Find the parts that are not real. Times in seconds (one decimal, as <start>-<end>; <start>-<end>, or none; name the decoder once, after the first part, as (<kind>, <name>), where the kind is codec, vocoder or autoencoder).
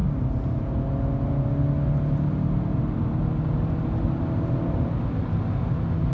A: none